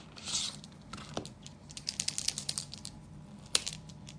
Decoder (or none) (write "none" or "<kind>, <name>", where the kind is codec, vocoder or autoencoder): none